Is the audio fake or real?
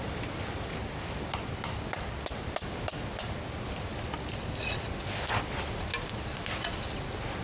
real